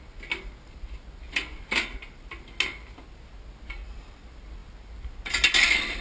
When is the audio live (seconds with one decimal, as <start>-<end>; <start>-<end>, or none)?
0.0-6.0